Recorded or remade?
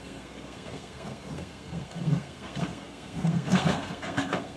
remade